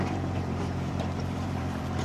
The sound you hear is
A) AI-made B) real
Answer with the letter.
A